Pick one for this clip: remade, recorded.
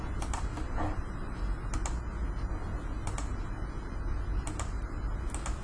recorded